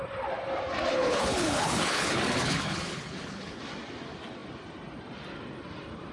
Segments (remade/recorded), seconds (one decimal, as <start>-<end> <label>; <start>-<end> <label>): 0.0-0.9 recorded; 0.9-3.6 remade; 3.6-6.1 recorded